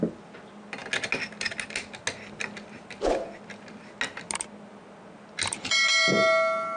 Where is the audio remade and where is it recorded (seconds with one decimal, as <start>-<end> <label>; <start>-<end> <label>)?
0.0-6.8 recorded